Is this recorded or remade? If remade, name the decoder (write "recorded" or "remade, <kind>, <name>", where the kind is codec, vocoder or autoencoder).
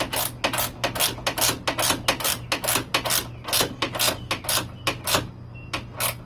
recorded